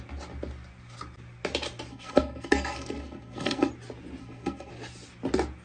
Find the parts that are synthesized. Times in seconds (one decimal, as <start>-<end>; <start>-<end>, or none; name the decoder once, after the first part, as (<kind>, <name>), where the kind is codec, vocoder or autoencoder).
1.9-3.7 (codec, SNAC); 4.2-4.7